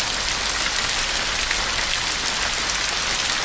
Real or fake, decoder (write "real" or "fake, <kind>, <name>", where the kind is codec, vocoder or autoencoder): real